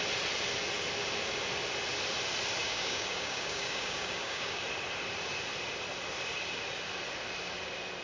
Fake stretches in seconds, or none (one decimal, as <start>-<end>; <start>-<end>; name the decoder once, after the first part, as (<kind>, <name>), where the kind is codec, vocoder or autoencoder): 2.6-4.6 (codec, DAC)